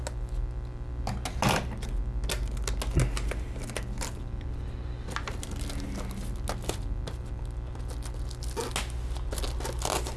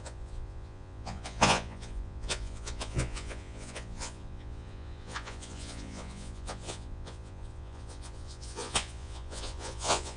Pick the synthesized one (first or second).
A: second